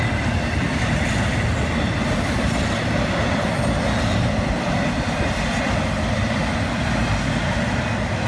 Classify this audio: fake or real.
real